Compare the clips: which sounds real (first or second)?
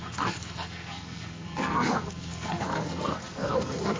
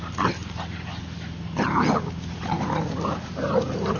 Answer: second